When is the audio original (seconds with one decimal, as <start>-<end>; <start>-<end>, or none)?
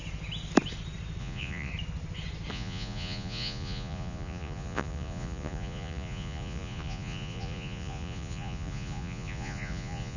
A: 0.0-1.2; 1.7-2.5